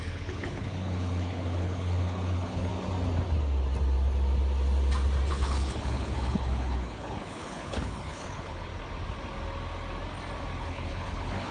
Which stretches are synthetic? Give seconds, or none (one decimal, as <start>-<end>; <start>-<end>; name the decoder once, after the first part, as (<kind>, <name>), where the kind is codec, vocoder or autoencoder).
0.0-2.7 (codec, HILCodec); 5.3-8.7; 10.6-11.5